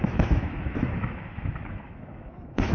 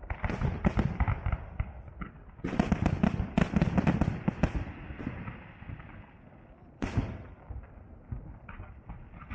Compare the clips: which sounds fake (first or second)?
first